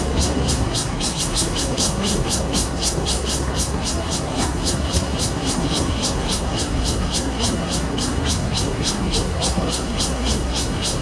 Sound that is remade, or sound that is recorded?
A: remade